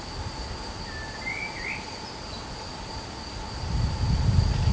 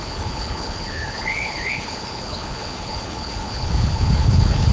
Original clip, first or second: first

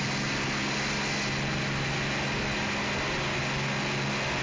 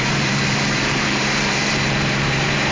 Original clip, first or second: first